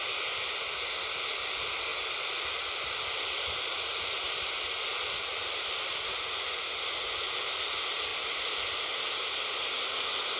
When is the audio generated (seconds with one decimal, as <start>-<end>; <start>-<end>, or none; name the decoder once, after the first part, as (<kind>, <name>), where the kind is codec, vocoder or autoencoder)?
1.9-4.5 (vocoder, BigVGAN v2); 8.1-8.9